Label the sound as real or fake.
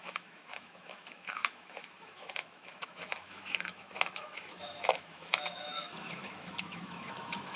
fake